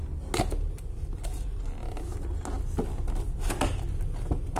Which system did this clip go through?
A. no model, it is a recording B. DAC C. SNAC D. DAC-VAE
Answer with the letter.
A